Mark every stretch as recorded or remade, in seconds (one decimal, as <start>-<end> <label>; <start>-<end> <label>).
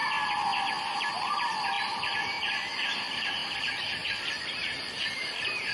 0.0-1.0 recorded; 1.0-2.9 remade; 2.9-3.6 recorded; 3.6-5.7 remade